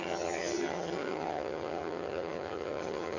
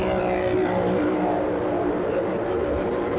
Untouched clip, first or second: second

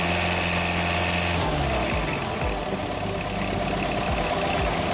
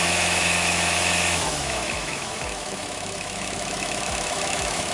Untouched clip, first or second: first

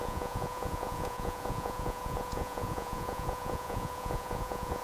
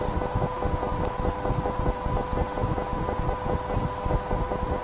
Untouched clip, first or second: second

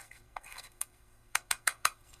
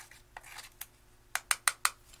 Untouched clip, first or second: second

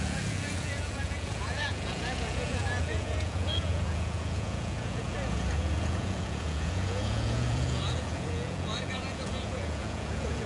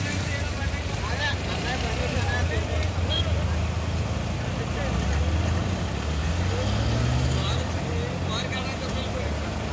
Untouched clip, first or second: second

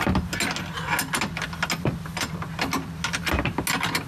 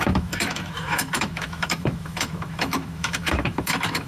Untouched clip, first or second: first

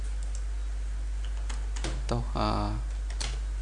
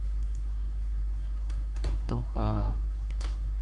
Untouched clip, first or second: first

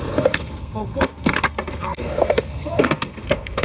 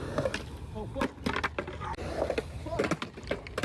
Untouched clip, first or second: second